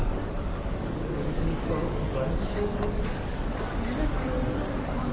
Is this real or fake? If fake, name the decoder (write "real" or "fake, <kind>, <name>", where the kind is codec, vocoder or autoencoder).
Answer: fake, codec, DAC